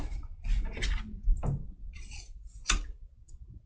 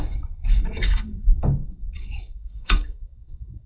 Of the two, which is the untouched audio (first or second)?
first